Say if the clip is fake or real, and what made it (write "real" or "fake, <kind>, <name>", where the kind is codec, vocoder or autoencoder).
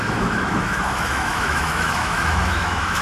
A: fake, autoencoder, DAC-VAE